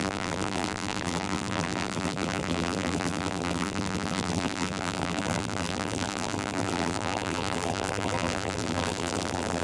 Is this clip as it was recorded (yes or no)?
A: no